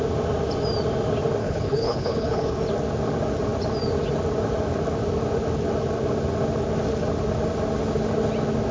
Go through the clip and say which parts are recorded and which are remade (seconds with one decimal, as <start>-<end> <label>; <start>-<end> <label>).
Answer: 0.0-1.4 recorded; 1.4-2.6 remade; 2.6-8.7 recorded